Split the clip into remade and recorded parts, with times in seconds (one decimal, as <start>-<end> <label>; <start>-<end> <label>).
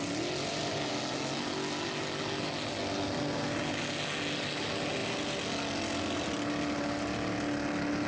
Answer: 0.0-8.1 recorded